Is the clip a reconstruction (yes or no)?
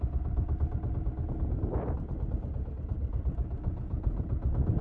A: no